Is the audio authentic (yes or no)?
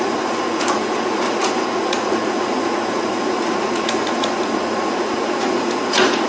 no